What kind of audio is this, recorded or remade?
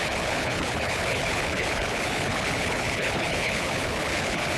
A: remade